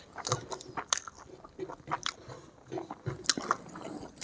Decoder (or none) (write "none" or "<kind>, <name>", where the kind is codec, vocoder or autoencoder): none